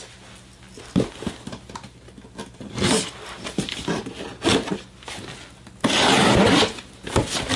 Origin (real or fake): real